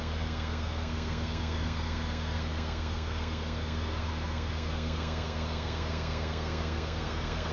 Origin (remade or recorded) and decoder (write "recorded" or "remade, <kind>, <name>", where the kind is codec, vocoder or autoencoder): remade, codec, SNAC